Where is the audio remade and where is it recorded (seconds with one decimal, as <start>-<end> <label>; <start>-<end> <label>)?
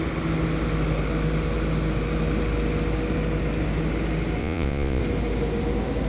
0.0-4.4 recorded; 4.4-5.0 remade; 5.0-6.1 recorded